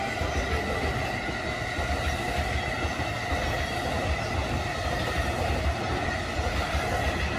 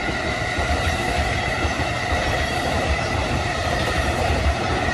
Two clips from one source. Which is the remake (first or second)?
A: second